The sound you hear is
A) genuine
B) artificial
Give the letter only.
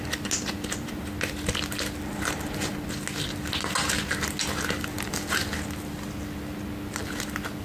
A